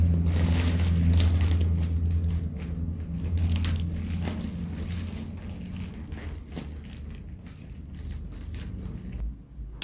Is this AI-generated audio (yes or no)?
no